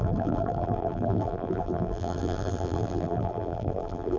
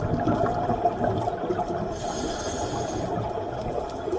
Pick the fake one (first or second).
first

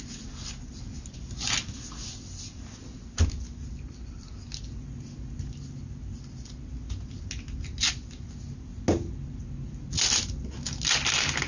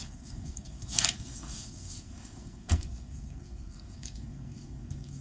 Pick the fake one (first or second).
second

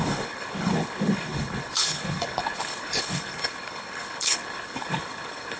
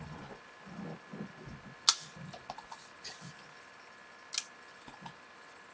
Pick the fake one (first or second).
first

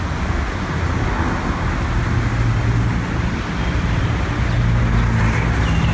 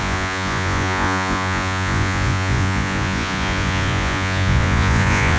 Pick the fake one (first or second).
second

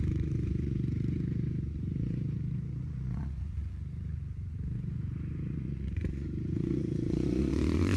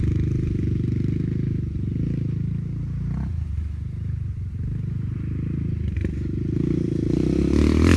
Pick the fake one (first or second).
first